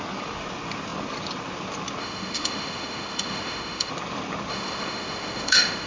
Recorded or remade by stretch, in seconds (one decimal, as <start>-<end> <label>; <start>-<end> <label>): 0.0-2.0 recorded; 2.0-3.9 remade; 3.9-4.5 recorded; 4.5-5.9 remade